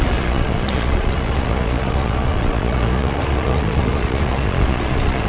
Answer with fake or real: fake